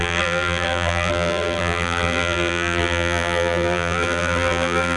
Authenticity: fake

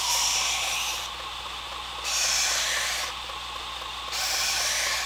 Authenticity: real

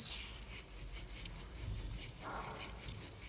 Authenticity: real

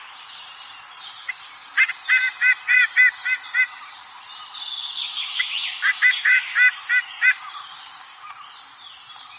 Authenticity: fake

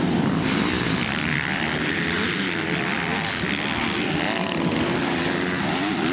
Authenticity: fake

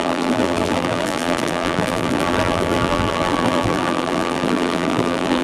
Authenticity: fake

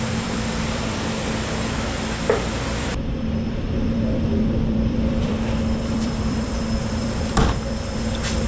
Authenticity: fake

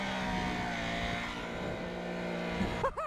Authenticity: real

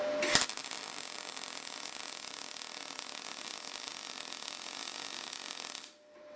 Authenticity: fake